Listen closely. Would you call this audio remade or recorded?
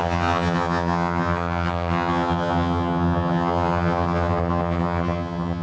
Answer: remade